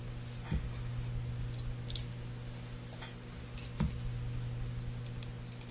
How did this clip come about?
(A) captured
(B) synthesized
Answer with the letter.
A